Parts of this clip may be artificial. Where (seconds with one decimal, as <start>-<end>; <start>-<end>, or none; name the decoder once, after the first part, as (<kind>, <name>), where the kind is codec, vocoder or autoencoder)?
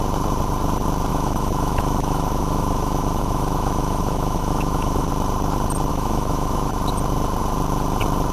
1.1-5.1 (autoencoder, DAC-VAE); 5.9-6.7